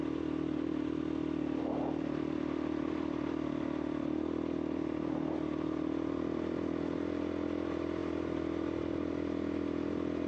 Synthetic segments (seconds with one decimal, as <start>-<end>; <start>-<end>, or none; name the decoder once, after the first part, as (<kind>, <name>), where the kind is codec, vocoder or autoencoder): none